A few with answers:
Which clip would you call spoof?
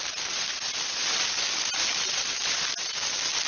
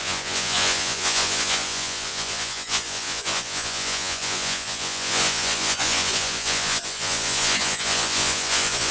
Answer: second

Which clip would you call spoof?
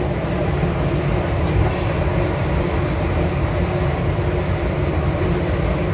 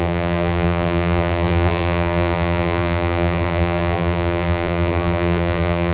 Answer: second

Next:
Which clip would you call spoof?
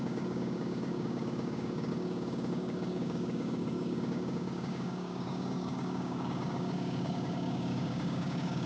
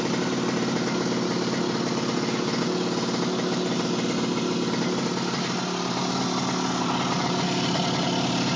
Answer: first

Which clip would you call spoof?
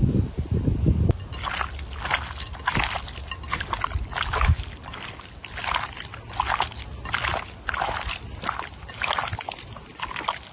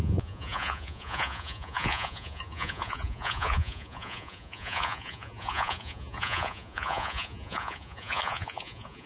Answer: second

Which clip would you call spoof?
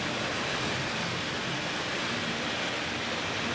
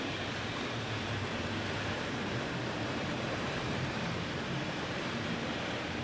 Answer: second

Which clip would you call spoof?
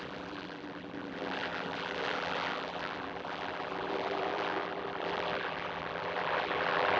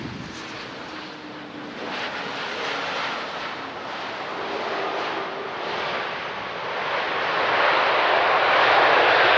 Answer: first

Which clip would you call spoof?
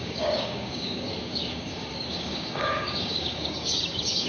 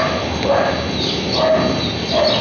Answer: first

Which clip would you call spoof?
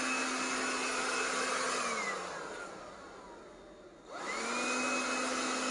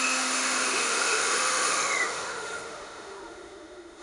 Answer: second